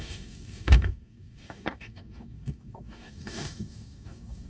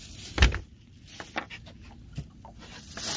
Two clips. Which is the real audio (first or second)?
second